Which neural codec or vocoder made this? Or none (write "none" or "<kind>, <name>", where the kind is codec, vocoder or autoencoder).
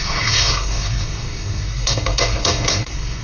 codec, SNAC